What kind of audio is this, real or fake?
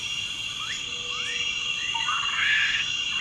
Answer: real